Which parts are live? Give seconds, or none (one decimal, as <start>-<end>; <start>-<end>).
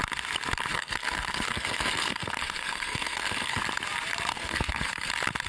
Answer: 0.0-0.7; 3.6-4.3; 5.1-5.5